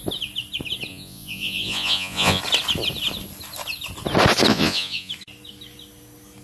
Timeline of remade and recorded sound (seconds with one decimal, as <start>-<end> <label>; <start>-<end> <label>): 0.0-0.9 recorded; 0.9-2.4 remade; 2.4-4.5 recorded; 4.5-5.1 remade; 5.1-6.4 recorded